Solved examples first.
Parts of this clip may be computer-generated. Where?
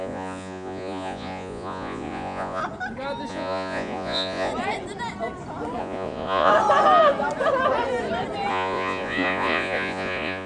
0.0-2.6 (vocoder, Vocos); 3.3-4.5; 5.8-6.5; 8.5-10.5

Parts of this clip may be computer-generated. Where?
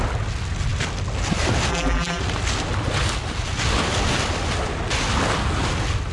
1.7-2.2 (vocoder, BigVGAN v2)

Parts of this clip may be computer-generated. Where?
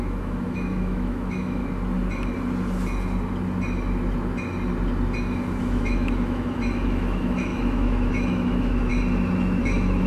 0.0-1.6 (autoencoder, DAC-VAE); 5.6-8.9; 9.6-10.1